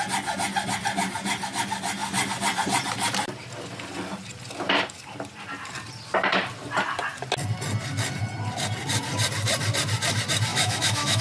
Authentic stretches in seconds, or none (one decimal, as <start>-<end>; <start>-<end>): 0.0-10.5